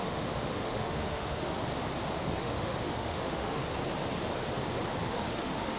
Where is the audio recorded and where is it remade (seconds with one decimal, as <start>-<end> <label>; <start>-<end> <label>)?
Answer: 0.0-1.6 remade; 1.6-2.4 recorded; 2.4-3.6 remade; 3.6-5.0 recorded; 5.0-5.8 remade